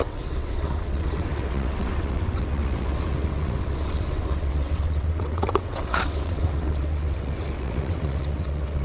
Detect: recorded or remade remade